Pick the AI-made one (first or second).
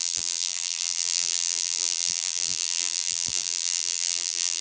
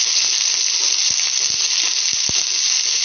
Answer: first